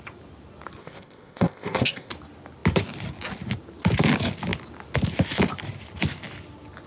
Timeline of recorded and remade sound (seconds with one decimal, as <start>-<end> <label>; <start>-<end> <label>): 0.0-0.8 recorded; 0.8-2.1 remade; 2.1-6.9 recorded

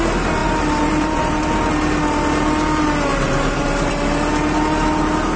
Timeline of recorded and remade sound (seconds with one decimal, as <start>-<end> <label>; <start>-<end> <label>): 0.0-0.4 recorded; 0.4-1.7 remade; 1.7-3.1 recorded; 3.1-3.9 remade; 3.9-5.4 recorded